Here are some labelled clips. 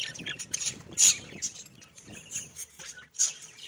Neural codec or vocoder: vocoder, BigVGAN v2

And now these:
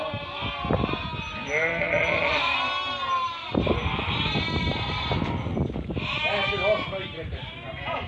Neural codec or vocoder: none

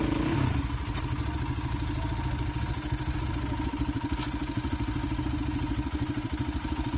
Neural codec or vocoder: none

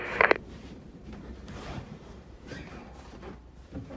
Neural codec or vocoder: vocoder, BigVGAN v2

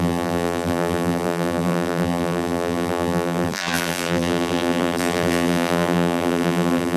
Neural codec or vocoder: vocoder, BigVGAN v2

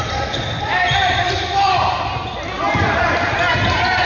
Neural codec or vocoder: vocoder, BigVGAN v2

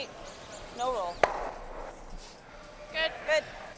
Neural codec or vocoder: none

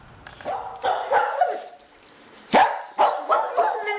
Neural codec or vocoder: vocoder, BigVGAN v2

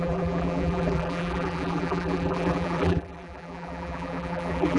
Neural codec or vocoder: vocoder, BigVGAN v2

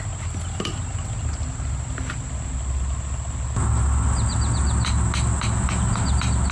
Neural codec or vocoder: none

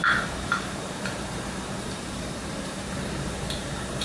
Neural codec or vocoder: vocoder, BigVGAN v2